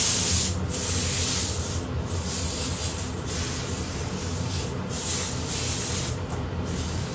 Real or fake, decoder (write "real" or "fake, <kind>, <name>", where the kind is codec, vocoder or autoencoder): real